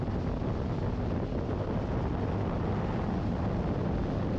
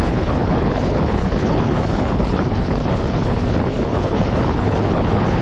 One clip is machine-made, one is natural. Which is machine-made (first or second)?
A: second